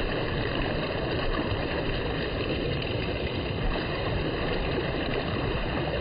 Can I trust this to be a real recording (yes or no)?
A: no